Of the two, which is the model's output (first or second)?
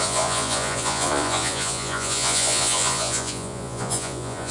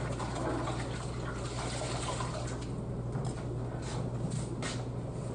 first